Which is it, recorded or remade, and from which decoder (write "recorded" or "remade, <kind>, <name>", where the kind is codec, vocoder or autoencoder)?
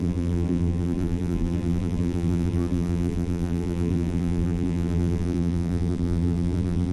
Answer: remade, vocoder, BigVGAN v2